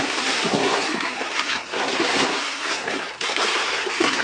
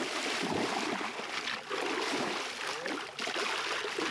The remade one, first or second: first